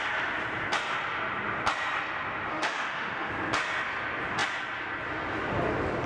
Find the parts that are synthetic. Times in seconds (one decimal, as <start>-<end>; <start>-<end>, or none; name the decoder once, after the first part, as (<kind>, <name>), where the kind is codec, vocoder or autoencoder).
2.5-3.3 (autoencoder, DAC-VAE)